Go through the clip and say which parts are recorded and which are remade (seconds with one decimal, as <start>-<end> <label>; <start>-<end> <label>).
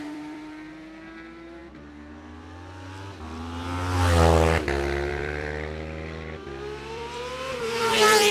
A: 0.0-1.6 remade; 1.6-5.1 recorded; 5.1-8.3 remade